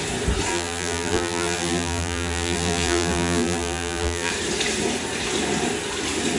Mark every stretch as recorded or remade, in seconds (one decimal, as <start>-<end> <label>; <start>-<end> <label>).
0.0-0.5 recorded; 0.5-4.3 remade; 4.3-6.4 recorded